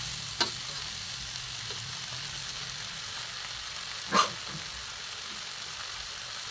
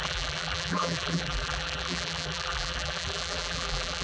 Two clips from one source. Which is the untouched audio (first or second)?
first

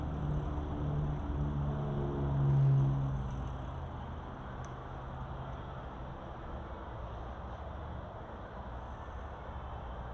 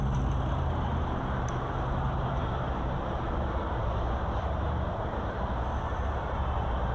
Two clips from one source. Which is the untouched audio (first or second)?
first